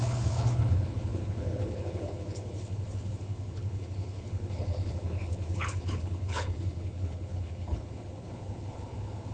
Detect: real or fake fake